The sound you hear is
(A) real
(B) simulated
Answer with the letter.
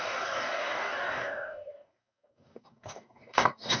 B